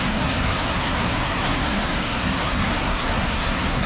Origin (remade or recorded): remade